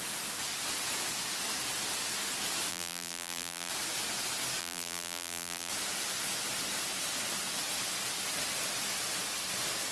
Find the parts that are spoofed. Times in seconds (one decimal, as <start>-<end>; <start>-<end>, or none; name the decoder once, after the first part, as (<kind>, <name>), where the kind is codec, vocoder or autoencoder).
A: 2.7-3.7 (vocoder, BigVGAN v2); 4.6-5.7